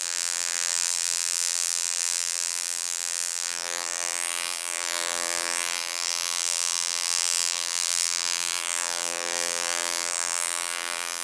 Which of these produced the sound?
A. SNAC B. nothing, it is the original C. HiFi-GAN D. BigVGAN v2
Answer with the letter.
D